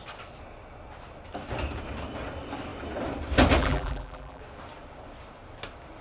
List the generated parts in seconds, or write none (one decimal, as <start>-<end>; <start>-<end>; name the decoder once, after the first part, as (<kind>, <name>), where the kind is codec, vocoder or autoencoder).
3.6-4.4 (vocoder, BigVGAN v2)